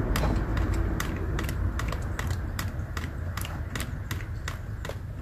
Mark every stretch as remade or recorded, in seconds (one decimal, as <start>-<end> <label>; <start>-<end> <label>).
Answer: 0.0-0.5 recorded; 0.5-3.6 remade; 3.6-5.2 recorded